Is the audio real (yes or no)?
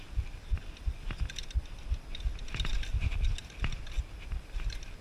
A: yes